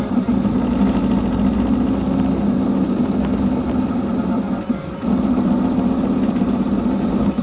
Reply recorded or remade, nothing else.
recorded